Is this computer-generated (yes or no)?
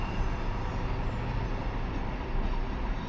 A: no